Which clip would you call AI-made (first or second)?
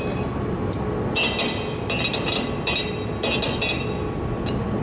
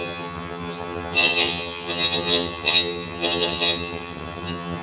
second